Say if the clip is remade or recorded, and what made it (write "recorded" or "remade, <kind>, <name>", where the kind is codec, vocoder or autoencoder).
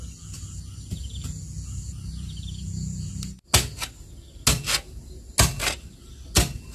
recorded